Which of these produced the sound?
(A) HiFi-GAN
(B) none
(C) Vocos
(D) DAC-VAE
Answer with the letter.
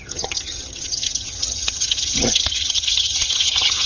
A